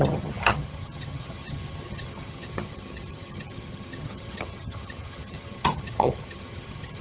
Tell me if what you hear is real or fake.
fake